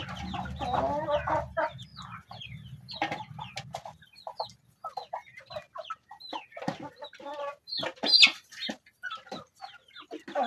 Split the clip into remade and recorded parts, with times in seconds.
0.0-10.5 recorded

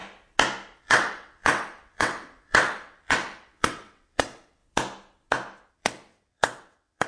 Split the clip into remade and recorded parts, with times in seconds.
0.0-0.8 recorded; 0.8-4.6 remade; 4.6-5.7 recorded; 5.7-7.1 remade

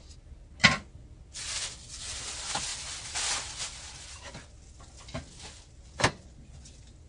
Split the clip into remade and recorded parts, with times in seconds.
0.0-7.1 recorded

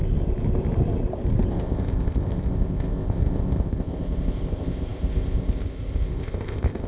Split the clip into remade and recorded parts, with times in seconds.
0.0-1.5 recorded; 1.5-6.9 remade

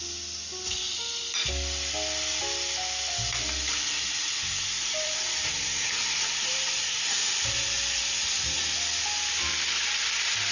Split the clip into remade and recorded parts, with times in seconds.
0.0-4.8 recorded; 4.8-8.0 remade; 8.0-10.5 recorded

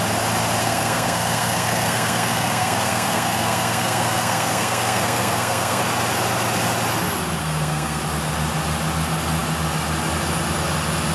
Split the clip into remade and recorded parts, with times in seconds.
0.0-0.6 recorded; 0.6-5.8 remade; 5.8-7.4 recorded; 7.4-8.0 remade; 8.0-11.1 recorded